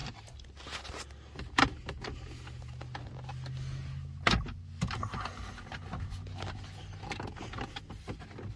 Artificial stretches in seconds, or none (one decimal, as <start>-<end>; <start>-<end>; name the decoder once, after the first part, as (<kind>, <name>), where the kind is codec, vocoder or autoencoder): none

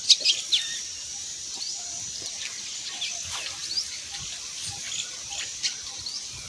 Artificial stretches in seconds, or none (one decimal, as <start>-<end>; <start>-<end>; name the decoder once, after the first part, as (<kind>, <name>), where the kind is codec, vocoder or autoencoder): none

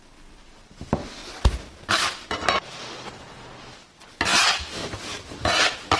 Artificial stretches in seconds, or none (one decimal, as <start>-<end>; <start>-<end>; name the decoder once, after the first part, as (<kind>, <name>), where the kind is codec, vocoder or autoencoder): none

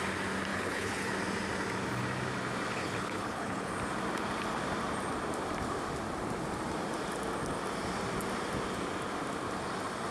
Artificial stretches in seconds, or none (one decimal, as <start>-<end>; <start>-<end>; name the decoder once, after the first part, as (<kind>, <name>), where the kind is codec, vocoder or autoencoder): 0.5-1.1 (codec, HILCodec); 2.8-3.7

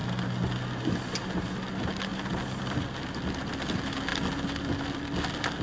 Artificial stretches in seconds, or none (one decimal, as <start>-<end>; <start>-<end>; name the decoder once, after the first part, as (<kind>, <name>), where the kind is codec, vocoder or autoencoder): none

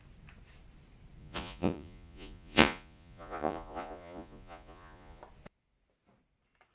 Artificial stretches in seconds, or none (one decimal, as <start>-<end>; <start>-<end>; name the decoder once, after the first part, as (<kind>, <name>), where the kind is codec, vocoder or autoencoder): 1.2-5.2 (vocoder, Vocos)

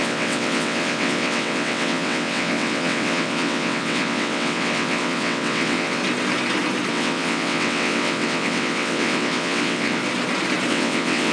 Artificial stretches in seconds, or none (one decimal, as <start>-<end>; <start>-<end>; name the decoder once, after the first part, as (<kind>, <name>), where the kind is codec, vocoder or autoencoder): 0.0-6.0 (vocoder, WaveNeXt); 6.9-10.0; 10.7-11.3